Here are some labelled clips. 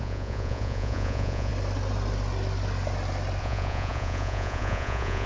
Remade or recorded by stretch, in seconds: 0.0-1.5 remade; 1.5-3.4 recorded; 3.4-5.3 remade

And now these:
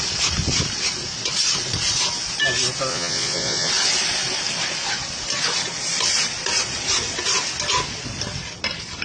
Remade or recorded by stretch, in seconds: 0.0-2.9 recorded; 2.9-3.7 remade; 3.7-9.0 recorded

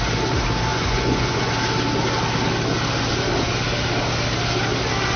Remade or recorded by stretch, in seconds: 0.0-0.7 recorded; 0.7-1.5 remade; 1.5-5.2 recorded

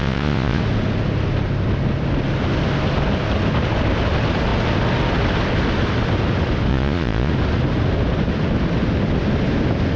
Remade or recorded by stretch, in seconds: 0.0-0.6 remade; 0.6-6.7 recorded; 6.7-7.3 remade; 7.3-10.0 recorded

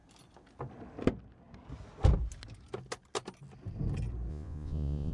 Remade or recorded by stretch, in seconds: 0.0-4.3 recorded; 4.3-5.1 remade

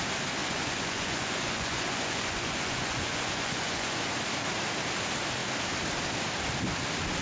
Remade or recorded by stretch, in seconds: 0.0-0.4 recorded; 0.4-4.1 remade; 4.1-7.2 recorded

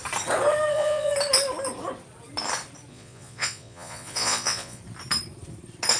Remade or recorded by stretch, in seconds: 0.0-0.7 recorded; 0.7-1.1 remade; 1.1-2.9 recorded; 2.9-4.8 remade; 4.8-6.0 recorded